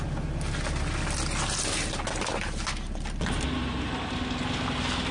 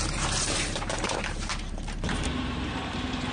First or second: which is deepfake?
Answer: second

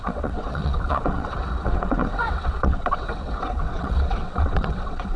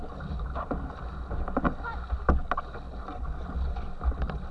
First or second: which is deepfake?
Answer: first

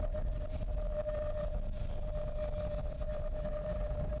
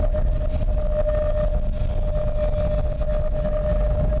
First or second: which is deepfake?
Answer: first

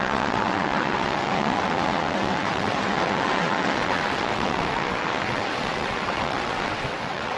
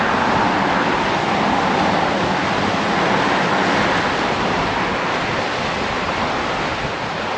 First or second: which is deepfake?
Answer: first